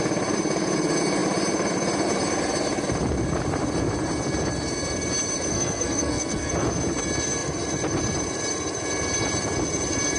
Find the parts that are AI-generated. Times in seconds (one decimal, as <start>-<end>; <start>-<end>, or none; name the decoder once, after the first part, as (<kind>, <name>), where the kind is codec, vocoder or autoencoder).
5.5-6.5 (codec, SNAC)